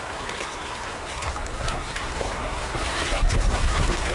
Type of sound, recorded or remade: remade